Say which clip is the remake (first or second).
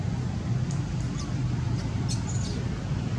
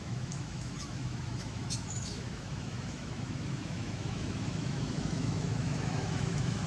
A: second